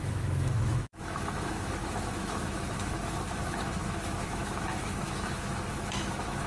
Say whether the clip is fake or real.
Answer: fake